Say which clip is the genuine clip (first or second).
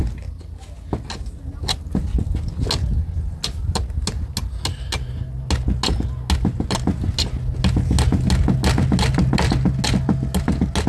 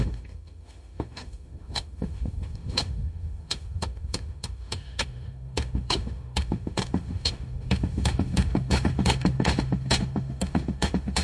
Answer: first